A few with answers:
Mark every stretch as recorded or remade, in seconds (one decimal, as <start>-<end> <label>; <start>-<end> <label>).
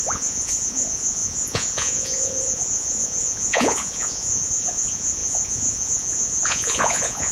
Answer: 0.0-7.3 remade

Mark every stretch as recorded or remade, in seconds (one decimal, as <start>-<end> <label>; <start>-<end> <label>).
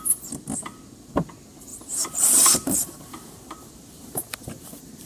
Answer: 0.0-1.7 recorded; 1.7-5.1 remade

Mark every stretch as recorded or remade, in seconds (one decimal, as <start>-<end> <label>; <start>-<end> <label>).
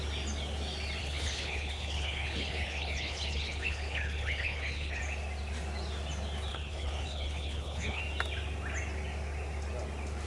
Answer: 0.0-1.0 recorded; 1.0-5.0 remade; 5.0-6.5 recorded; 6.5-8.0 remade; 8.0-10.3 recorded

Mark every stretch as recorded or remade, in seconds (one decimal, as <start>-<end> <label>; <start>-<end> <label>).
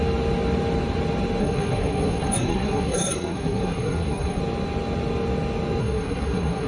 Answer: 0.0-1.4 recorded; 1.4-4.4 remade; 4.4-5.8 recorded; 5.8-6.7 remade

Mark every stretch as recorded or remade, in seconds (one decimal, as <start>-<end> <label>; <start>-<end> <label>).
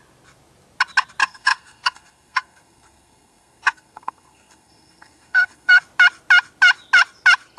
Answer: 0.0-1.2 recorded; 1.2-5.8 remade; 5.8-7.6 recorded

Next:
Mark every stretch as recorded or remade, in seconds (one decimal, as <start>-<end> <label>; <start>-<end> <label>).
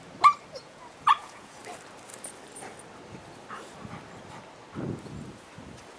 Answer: 0.0-0.6 recorded; 0.6-1.6 remade; 1.6-6.0 recorded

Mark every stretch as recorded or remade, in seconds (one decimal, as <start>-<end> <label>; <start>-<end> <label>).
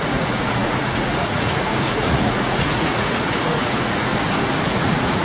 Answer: 0.0-4.1 remade; 4.1-4.7 recorded; 4.7-5.2 remade